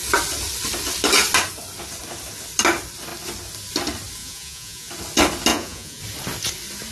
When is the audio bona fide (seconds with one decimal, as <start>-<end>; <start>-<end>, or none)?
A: 0.0-4.2; 4.9-5.5; 6.0-6.9